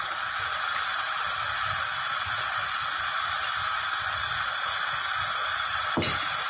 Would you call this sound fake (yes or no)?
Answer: no